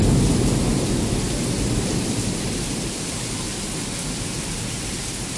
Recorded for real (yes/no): yes